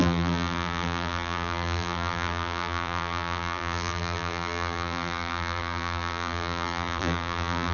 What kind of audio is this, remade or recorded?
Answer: remade